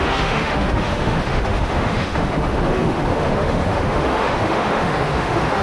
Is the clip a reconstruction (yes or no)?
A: yes